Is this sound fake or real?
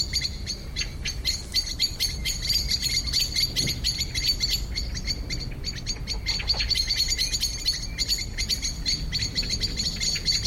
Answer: real